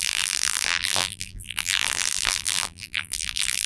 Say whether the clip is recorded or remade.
remade